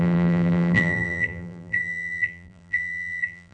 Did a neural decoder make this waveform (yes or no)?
yes